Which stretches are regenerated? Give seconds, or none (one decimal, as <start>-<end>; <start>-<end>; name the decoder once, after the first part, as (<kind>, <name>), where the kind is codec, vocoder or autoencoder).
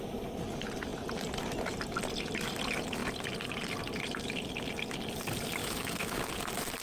5.6-6.3 (autoencoder, DAC-VAE)